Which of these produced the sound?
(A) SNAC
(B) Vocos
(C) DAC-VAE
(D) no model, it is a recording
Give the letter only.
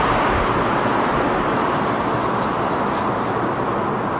D